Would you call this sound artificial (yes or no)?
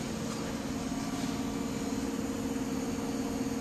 no